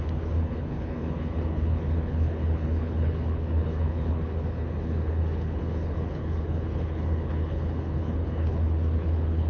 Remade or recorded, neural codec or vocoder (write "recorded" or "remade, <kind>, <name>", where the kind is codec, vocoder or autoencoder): remade, codec, HILCodec